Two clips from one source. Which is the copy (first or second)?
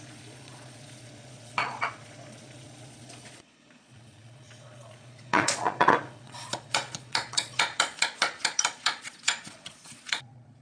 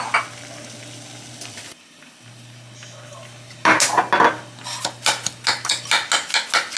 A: first